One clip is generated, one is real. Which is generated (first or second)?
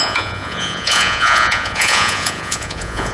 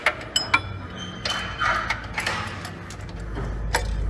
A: first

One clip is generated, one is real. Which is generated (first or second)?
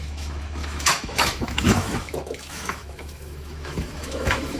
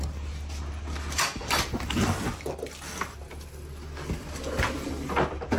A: first